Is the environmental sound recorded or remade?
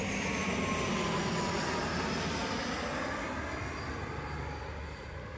recorded